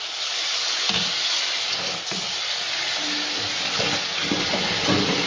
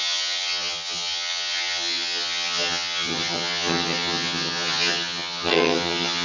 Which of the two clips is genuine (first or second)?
first